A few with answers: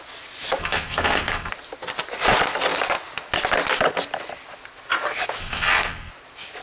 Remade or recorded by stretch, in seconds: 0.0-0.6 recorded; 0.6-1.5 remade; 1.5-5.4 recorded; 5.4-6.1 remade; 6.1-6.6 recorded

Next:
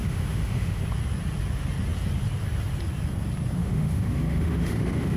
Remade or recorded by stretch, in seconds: 0.0-0.8 remade; 0.8-3.6 recorded; 3.6-5.2 remade